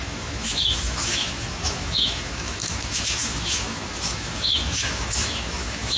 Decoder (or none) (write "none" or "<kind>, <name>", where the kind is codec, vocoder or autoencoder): autoencoder, DAC-VAE